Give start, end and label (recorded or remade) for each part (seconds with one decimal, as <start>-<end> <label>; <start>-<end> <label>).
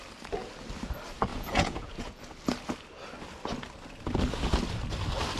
0.0-1.3 recorded; 1.3-2.2 remade; 2.2-5.4 recorded